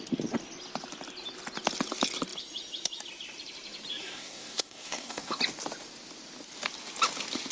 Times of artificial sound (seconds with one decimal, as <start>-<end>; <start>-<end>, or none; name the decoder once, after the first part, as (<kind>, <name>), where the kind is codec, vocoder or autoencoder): 4.0-5.4 (codec, SNAC)